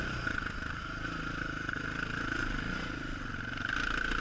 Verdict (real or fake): real